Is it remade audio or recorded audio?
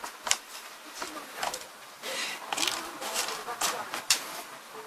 remade